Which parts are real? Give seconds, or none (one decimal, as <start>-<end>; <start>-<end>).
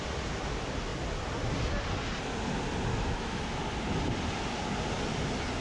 0.0-2.9; 3.6-5.6